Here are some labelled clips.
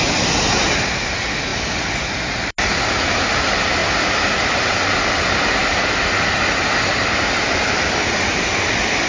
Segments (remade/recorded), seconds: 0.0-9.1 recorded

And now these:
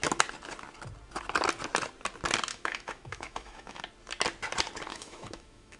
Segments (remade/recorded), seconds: 0.0-2.5 recorded; 2.5-3.8 remade; 3.8-4.9 recorded; 4.9-5.8 remade

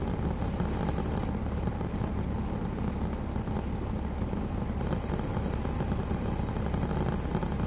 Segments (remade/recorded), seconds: 0.0-4.5 recorded; 4.5-5.1 remade; 5.1-7.7 recorded